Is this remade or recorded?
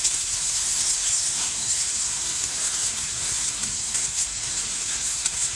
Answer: remade